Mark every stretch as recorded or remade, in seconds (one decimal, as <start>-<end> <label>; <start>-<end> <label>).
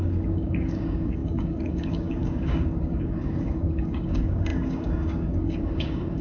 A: 0.0-6.2 remade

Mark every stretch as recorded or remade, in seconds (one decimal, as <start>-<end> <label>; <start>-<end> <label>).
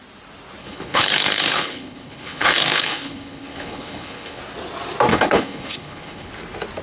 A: 0.0-0.6 recorded; 0.6-4.4 remade; 4.4-5.1 recorded; 5.1-6.3 remade; 6.3-6.8 recorded